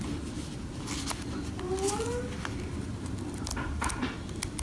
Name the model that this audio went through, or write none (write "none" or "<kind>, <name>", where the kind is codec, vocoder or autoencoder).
none